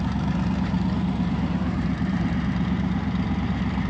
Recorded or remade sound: remade